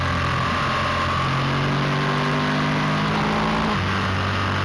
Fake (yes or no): no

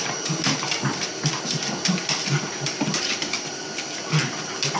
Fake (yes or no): no